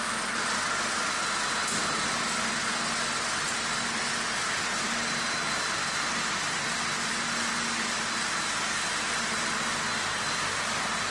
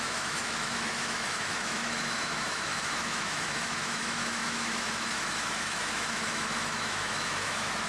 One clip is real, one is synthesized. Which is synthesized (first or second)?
second